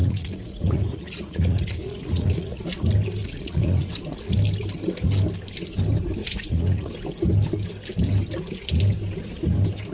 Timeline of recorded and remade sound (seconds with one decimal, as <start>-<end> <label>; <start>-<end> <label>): 0.0-2.6 remade; 2.6-3.2 recorded; 3.2-3.9 remade; 3.9-6.2 recorded; 6.2-6.9 remade; 6.9-9.9 recorded